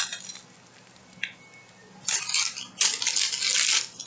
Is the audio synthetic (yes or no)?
no